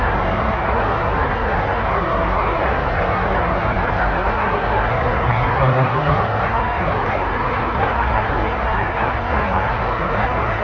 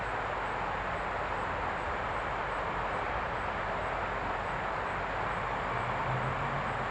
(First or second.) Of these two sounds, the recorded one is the second